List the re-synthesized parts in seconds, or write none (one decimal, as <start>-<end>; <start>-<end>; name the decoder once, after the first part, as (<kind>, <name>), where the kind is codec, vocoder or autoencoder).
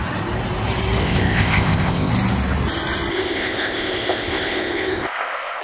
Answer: 1.0-2.1 (codec, ZipCodec); 3.1-5.6